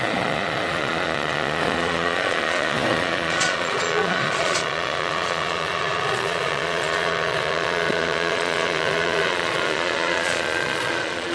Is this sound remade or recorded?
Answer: remade